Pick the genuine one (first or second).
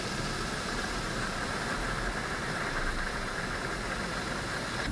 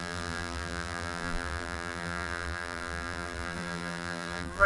first